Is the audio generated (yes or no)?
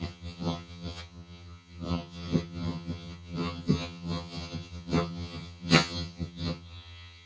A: yes